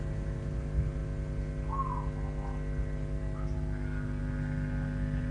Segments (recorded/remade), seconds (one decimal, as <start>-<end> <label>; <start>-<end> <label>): 0.0-5.3 recorded